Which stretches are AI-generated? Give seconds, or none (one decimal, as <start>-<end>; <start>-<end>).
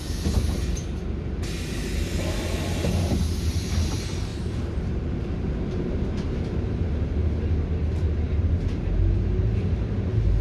4.3-6.4